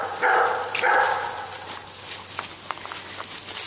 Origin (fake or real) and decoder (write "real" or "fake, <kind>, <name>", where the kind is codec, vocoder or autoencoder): real